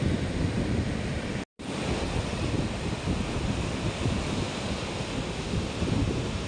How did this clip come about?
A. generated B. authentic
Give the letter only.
B